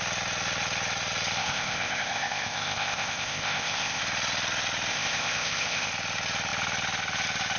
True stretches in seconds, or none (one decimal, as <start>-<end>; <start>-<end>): 0.0-1.4; 4.0-4.9; 5.9-7.6